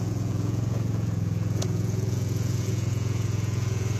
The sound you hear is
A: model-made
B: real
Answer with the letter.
A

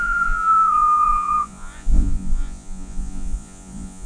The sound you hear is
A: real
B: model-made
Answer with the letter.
B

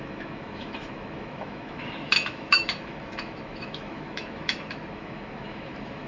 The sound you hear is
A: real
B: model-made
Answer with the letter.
B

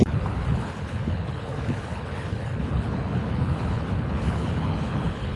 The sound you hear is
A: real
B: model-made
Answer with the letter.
B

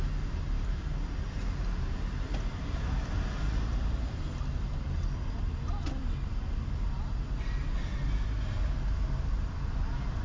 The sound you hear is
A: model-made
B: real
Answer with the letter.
B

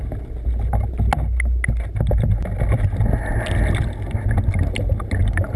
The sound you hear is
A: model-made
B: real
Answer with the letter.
B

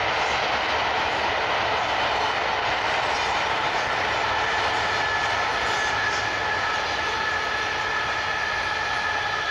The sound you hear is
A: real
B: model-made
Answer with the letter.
A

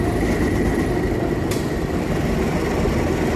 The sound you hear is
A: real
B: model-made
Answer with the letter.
B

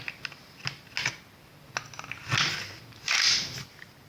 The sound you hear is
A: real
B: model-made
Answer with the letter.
A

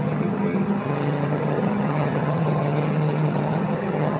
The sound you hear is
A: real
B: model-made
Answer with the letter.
B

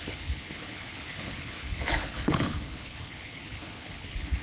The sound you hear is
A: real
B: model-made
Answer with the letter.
B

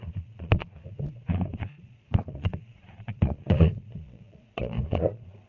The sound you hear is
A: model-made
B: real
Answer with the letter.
A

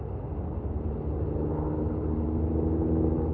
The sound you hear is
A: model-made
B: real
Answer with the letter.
B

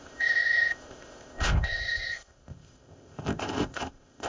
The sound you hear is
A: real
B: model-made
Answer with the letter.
B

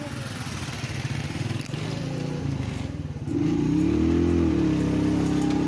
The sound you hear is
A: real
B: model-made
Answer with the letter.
A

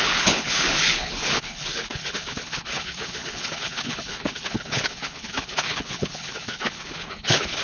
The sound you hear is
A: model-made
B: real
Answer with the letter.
A